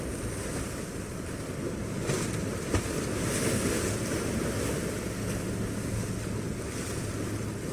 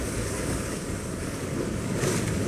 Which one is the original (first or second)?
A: first